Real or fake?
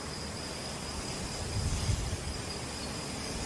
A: real